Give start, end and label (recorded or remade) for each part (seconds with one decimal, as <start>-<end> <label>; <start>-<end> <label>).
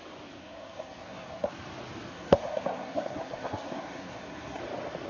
0.0-0.4 recorded; 0.4-1.5 remade; 1.5-2.1 recorded; 2.1-4.6 remade; 4.6-5.1 recorded